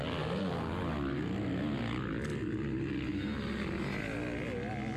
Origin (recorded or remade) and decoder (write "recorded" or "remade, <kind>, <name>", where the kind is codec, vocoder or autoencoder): recorded